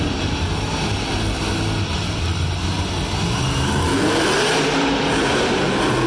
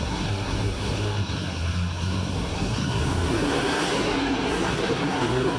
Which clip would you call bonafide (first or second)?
first